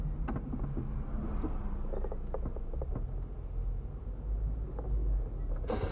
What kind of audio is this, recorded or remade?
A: recorded